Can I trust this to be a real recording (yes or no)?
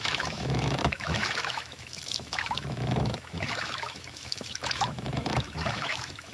no